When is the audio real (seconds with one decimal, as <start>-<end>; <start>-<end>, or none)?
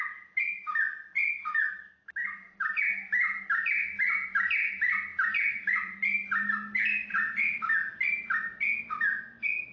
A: 0.0-7.1; 7.6-9.7